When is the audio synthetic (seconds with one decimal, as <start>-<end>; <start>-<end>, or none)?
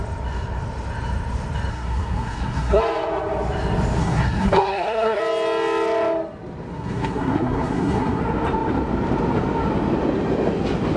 1.7-2.8; 4.0-5.2; 6.7-8.2